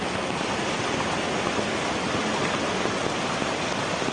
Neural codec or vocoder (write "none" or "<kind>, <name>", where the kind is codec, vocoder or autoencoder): none